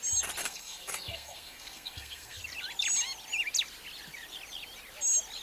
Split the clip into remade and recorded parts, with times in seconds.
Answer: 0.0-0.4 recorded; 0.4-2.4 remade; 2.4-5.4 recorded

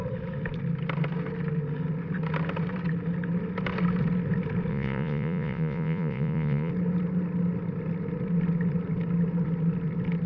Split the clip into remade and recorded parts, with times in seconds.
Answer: 0.0-4.7 recorded; 4.7-6.7 remade; 6.7-10.3 recorded

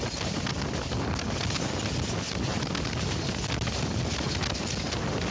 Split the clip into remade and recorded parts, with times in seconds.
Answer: 0.0-5.3 recorded

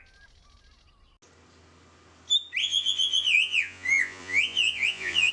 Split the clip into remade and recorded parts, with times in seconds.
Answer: 0.0-2.6 recorded; 2.6-5.3 remade